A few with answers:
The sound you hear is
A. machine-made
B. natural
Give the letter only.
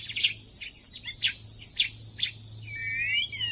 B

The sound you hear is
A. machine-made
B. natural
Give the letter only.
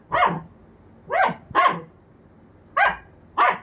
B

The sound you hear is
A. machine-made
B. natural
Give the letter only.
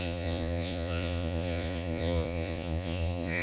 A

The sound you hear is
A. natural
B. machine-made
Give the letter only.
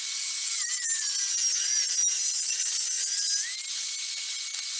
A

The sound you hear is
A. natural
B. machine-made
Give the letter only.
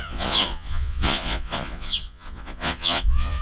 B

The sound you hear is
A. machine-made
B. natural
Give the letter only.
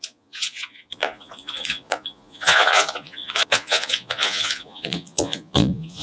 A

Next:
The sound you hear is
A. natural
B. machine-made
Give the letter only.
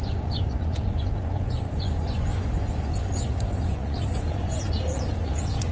B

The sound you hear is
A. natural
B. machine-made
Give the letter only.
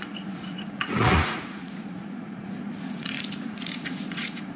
B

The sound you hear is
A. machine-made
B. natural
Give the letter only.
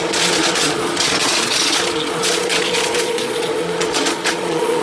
A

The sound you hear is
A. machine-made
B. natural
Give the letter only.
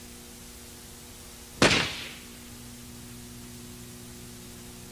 B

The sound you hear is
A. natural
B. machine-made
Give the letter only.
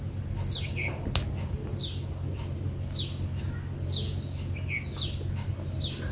A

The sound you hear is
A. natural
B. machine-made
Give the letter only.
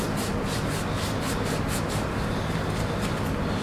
A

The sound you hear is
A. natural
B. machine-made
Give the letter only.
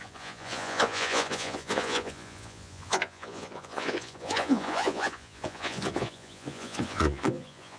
B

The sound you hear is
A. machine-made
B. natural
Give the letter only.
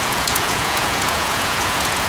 A